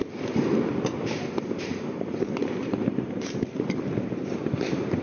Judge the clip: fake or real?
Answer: fake